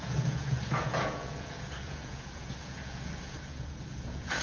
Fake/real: fake